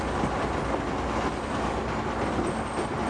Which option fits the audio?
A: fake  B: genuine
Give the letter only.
A